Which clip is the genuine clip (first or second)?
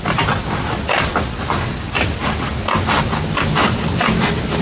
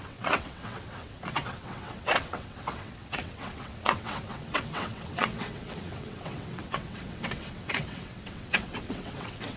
first